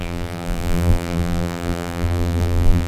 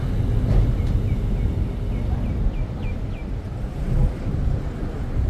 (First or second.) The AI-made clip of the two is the first